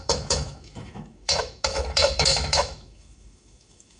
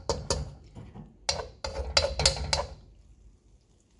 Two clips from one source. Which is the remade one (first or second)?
first